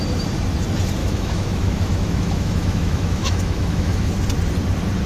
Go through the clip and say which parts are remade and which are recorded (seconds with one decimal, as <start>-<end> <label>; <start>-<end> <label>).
0.0-1.0 recorded; 1.0-4.1 remade; 4.1-5.1 recorded